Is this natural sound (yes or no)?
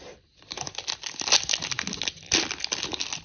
yes